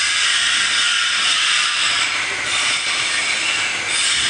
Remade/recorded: remade